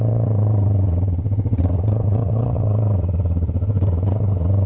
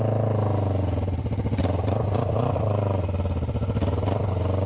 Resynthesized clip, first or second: first